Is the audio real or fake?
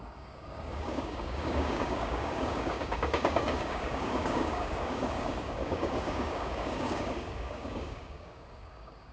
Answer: fake